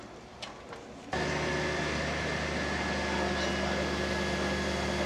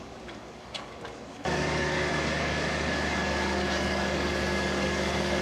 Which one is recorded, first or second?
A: first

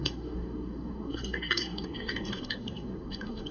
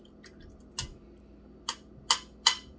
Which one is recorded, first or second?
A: second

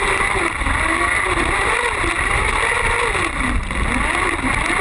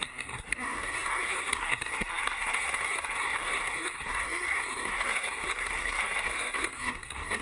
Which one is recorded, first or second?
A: first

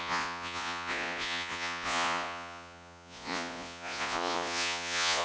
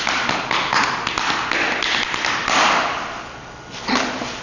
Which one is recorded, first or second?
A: second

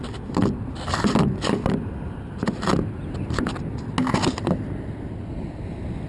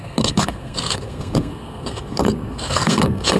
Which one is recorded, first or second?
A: first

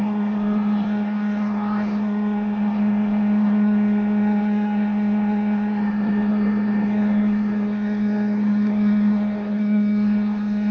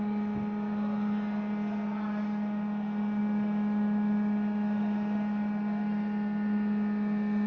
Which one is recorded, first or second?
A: second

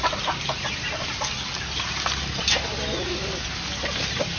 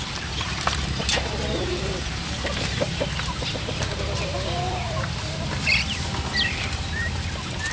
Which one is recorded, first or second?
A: first